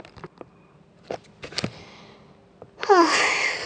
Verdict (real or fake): real